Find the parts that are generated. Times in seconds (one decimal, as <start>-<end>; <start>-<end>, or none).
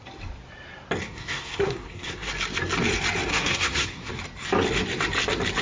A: 1.0-2.3; 3.3-4.1